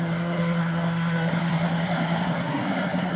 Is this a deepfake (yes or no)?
yes